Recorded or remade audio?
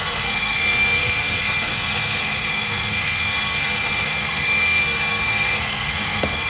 remade